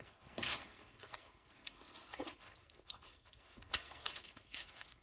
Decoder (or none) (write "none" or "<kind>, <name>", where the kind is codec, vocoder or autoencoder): codec, SNAC